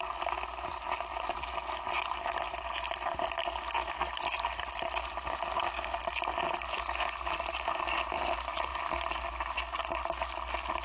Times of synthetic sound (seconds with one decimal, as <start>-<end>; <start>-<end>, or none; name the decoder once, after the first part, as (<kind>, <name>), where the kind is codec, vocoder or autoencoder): none